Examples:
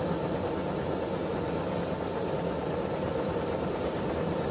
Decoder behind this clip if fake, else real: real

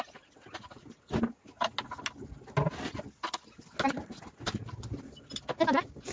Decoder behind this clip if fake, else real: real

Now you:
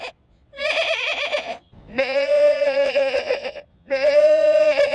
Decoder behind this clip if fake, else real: fake, vocoder, Vocos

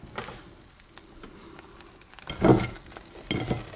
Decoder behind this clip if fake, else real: real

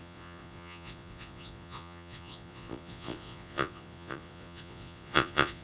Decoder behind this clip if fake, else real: fake, vocoder, Vocos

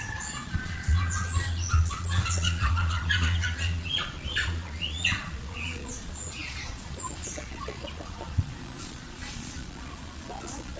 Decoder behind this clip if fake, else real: fake, vocoder, Vocos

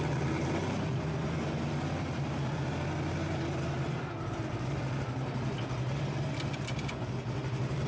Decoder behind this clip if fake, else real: real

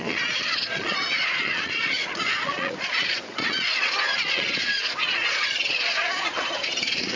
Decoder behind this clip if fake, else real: fake, vocoder, Vocos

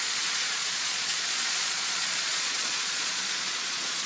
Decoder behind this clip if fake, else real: fake, vocoder, Vocos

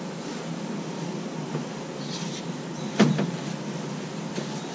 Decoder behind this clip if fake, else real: real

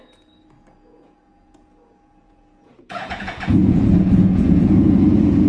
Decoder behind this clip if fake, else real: fake, vocoder, Vocos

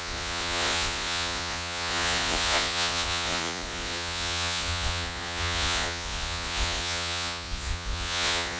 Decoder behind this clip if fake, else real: fake, vocoder, Vocos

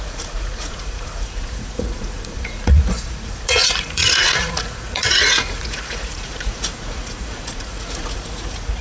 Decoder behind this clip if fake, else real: fake, vocoder, Vocos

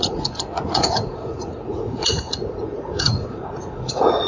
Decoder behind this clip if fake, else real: fake, vocoder, Vocos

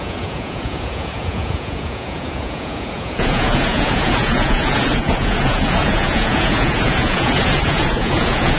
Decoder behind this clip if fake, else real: fake, vocoder, Vocos